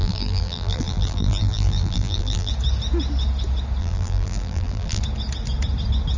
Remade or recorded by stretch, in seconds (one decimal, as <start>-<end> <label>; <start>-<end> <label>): 0.0-2.5 remade; 2.5-3.8 recorded; 3.8-5.0 remade; 5.0-6.2 recorded